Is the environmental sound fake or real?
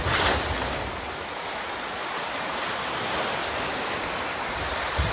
real